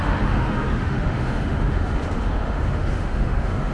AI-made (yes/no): yes